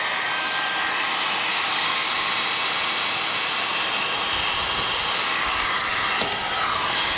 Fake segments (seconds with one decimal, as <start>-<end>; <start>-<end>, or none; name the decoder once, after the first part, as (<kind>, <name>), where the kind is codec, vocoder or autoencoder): 1.5-2.1 (codec, DAC); 5.3-5.8